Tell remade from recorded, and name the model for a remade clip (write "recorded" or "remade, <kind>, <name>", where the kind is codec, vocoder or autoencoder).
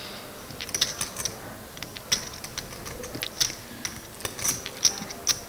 recorded